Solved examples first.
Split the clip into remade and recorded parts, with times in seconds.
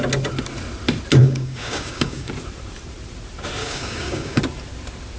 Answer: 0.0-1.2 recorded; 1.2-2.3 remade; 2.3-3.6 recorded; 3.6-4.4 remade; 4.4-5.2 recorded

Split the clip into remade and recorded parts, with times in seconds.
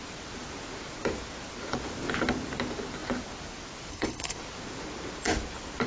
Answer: 0.0-3.9 recorded; 3.9-4.4 remade; 4.4-5.9 recorded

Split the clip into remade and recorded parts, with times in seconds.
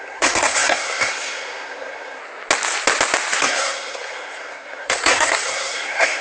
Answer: 0.0-2.2 remade; 2.2-3.4 recorded; 3.4-6.2 remade